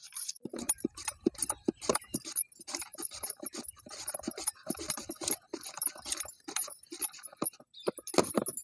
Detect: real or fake real